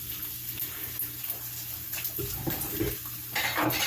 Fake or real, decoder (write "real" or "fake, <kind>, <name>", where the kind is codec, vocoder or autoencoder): real